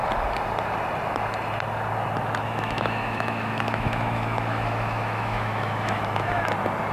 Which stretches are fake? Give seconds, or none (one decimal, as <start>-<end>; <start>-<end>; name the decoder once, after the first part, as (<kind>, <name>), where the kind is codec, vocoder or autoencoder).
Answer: 2.4-6.5 (autoencoder, DAC-VAE)